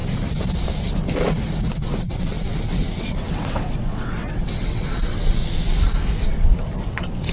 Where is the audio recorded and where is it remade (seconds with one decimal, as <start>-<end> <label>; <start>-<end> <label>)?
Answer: 0.0-1.7 recorded; 1.7-5.4 remade; 5.4-7.3 recorded